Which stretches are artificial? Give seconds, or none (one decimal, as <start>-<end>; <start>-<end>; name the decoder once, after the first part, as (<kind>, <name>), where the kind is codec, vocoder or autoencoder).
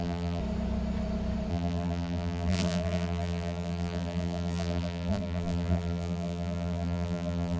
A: 0.0-0.4 (vocoder, BigVGAN v2); 1.5-7.6